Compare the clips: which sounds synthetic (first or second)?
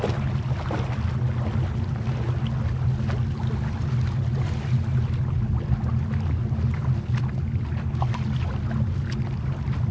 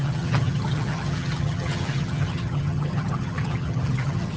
second